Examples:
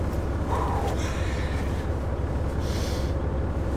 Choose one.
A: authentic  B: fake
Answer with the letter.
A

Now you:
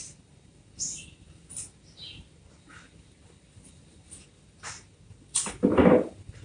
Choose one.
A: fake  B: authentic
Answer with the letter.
B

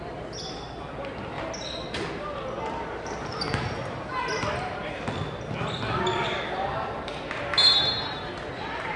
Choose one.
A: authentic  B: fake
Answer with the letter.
A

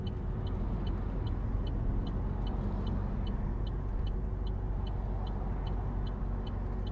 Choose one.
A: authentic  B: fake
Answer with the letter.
A